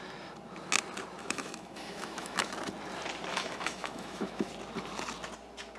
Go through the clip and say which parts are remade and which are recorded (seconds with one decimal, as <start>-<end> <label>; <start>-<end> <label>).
0.0-1.2 recorded; 1.2-2.5 remade; 2.5-3.3 recorded; 3.3-4.5 remade; 4.5-5.8 recorded